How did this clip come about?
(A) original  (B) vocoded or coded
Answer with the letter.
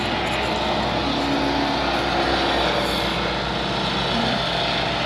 A